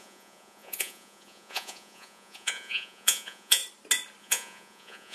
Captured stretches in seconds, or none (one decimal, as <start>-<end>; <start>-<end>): 3.6-4.2